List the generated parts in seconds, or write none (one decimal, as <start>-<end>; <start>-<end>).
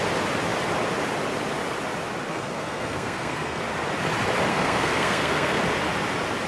2.3-3.6; 4.5-5.6